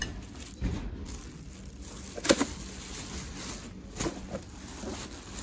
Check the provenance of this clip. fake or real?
real